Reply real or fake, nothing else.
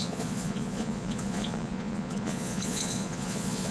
fake